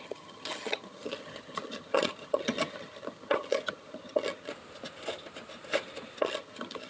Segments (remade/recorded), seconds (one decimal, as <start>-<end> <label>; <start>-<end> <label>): 0.0-4.5 remade; 4.5-6.2 recorded; 6.2-6.9 remade